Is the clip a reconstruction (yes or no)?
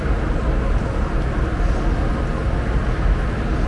no